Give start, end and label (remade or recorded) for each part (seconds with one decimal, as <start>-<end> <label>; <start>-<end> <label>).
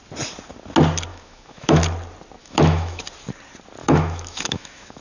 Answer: 0.0-1.1 recorded; 1.1-1.8 remade; 1.8-2.4 recorded; 2.4-3.0 remade; 3.0-3.8 recorded; 3.8-5.0 remade